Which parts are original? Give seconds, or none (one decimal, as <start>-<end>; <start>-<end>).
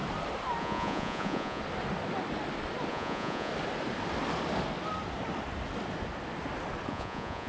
0.0-0.6; 1.6-2.9; 3.5-6.9